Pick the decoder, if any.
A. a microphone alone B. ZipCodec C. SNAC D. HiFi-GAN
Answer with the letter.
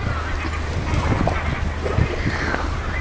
A